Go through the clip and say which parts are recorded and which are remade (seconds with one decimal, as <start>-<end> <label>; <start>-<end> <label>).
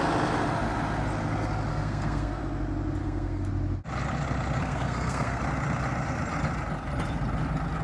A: 0.0-1.7 recorded; 1.7-2.4 remade; 2.4-3.0 recorded; 3.0-3.5 remade; 3.5-4.6 recorded; 4.6-5.4 remade; 5.4-7.8 recorded